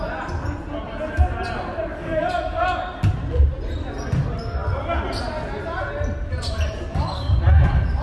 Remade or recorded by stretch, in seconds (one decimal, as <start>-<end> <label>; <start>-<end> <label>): 0.0-1.9 recorded; 1.9-2.8 remade; 2.8-6.9 recorded; 6.9-7.4 remade; 7.4-8.0 recorded